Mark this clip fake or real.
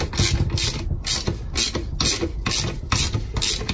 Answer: real